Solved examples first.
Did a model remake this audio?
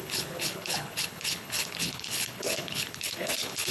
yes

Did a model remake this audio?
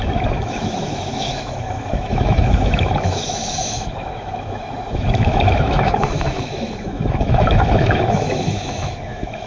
yes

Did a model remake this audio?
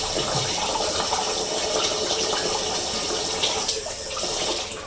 no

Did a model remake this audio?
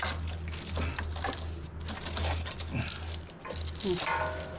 no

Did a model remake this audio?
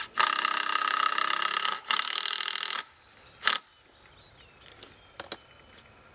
no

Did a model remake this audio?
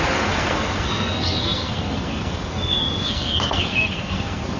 yes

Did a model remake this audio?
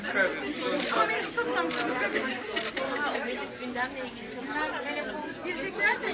no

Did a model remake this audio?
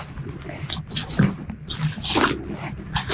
no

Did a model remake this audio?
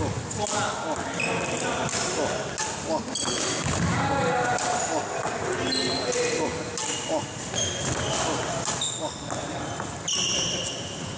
no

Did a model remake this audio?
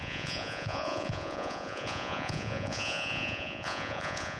yes